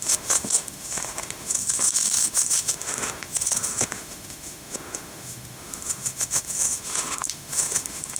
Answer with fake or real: fake